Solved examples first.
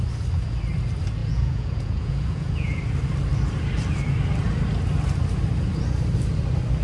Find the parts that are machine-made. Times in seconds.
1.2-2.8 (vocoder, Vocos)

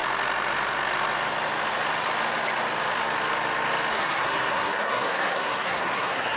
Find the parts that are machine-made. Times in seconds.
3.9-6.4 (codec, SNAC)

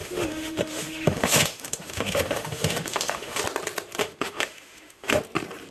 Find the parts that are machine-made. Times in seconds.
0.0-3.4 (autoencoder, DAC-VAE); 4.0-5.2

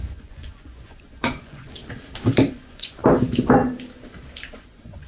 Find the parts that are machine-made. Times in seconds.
0.0-1.8 (vocoder, Vocos); 2.5-3.0; 4.5-5.1

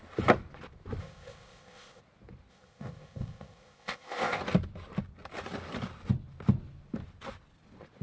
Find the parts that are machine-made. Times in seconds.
1.0-2.0 (codec, ZipCodec); 2.5-4.4

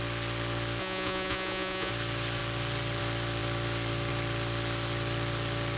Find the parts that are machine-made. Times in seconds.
0.8-1.9 (vocoder, Vocos)

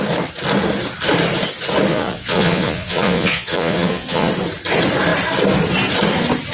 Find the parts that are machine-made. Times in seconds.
1.9-4.3 (vocoder, Vocos)

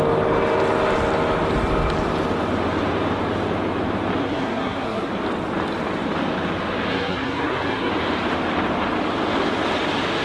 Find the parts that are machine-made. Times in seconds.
4.2-5.1 (codec, SNAC); 6.9-7.9